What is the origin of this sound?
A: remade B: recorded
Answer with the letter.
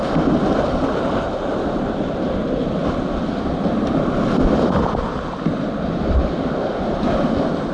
B